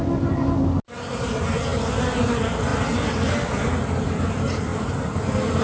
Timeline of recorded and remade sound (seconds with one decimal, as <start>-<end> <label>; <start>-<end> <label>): 0.0-5.6 recorded